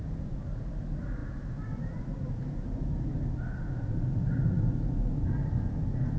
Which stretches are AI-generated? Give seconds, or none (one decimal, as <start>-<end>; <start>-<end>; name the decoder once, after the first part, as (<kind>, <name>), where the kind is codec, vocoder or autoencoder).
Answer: none